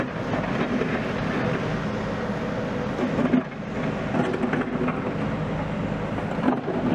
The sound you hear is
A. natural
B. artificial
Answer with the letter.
A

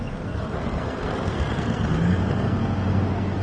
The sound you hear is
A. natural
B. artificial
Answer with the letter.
B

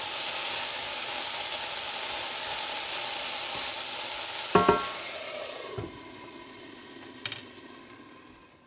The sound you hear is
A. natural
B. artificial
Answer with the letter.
A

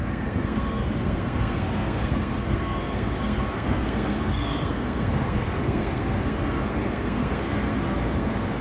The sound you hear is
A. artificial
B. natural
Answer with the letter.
A